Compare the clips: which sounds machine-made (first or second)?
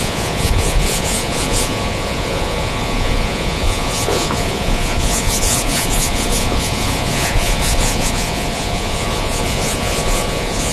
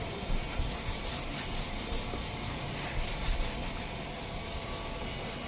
first